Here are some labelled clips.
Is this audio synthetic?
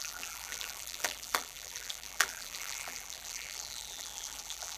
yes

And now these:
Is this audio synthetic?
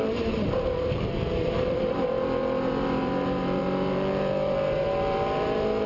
yes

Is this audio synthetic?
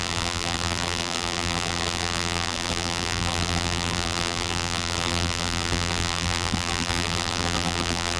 yes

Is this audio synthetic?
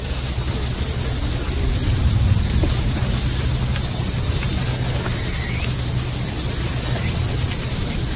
no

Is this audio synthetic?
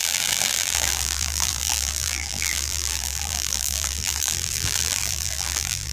yes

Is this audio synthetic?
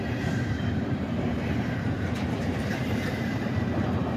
yes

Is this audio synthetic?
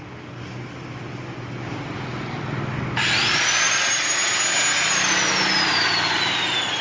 no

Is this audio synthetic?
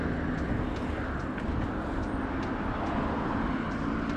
no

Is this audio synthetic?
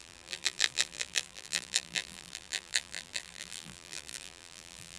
yes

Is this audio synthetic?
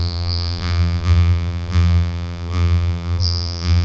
yes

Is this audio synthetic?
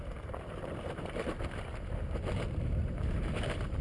yes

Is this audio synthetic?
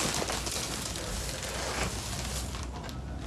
no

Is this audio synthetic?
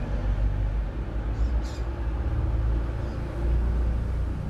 no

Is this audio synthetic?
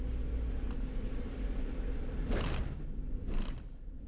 yes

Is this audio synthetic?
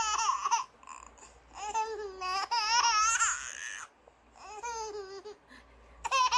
no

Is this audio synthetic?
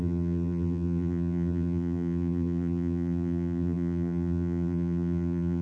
yes